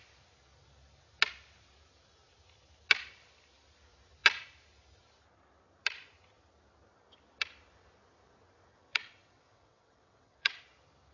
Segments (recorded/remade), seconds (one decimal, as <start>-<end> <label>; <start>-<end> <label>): 0.0-8.7 recorded; 8.7-10.6 remade; 10.6-11.1 recorded